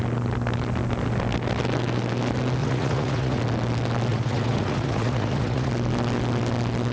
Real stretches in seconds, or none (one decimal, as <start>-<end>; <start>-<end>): 0.0-2.6; 3.4-4.1; 5.7-6.9